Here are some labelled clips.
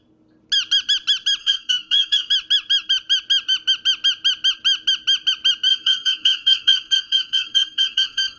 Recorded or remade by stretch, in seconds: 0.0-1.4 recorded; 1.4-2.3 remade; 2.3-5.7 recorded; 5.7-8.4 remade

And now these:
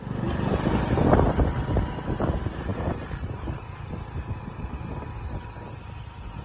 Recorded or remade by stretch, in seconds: 0.0-6.4 recorded

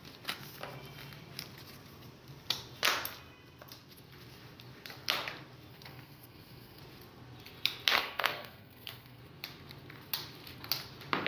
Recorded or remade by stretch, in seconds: 0.0-5.7 recorded; 5.7-6.8 remade; 6.8-8.0 recorded; 8.0-9.2 remade; 9.2-11.3 recorded

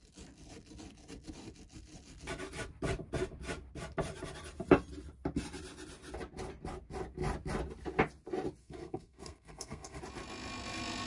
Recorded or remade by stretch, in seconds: 0.0-8.6 recorded; 8.6-10.0 remade; 10.0-11.1 recorded

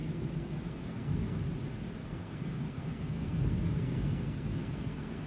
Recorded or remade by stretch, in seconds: 0.0-1.4 remade; 1.4-2.0 recorded; 2.0-5.3 remade

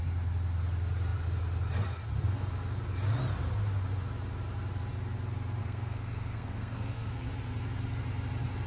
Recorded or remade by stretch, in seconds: 0.0-5.6 recorded; 5.6-7.3 remade; 7.3-8.7 recorded